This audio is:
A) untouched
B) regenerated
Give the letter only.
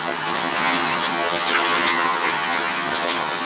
B